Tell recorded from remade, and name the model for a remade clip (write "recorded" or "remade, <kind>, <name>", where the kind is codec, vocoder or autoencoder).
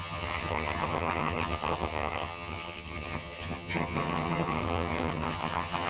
remade, vocoder, HiFi-GAN